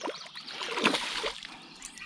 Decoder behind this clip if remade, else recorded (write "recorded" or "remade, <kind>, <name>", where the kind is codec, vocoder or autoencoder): recorded